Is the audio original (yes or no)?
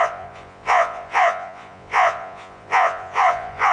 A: no